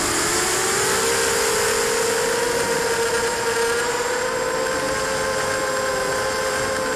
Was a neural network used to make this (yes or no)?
no